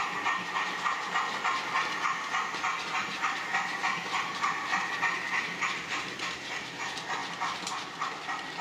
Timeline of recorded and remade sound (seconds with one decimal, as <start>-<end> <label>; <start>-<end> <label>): 0.0-7.2 recorded; 7.2-8.1 remade; 8.1-8.6 recorded